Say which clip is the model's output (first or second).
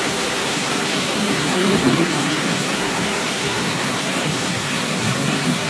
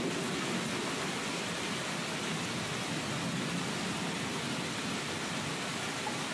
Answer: first